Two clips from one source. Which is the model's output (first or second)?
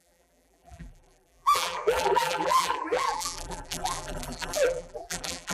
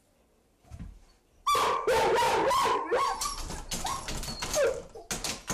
first